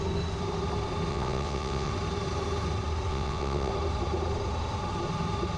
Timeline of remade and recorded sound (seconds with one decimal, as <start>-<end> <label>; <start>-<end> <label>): 0.0-1.1 recorded; 1.1-1.9 remade; 1.9-3.1 recorded; 3.1-3.7 remade; 3.7-5.6 recorded